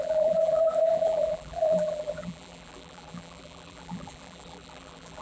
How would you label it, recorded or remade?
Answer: remade